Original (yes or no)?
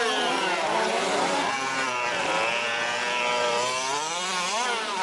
no